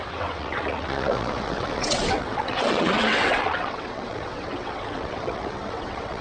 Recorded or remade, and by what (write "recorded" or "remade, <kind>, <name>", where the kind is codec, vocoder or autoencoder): remade, vocoder, WaveNeXt